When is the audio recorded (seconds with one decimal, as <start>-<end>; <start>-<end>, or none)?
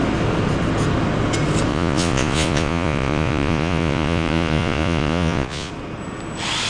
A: 0.0-1.7; 5.7-6.7